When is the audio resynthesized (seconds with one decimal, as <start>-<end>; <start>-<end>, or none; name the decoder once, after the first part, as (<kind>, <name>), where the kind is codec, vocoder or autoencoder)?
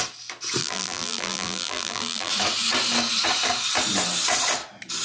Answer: 0.6-2.3 (vocoder, BigVGAN v2)